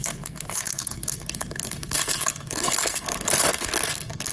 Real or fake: fake